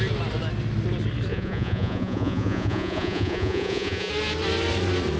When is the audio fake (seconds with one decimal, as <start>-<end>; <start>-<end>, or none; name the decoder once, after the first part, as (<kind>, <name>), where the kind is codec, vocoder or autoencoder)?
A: 1.3-4.1 (vocoder, Vocos)